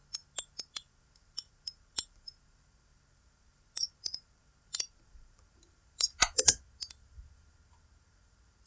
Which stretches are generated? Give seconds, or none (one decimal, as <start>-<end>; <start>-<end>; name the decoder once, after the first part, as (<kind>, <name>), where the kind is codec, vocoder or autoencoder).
0.6-8.7 (vocoder, BigVGAN v2)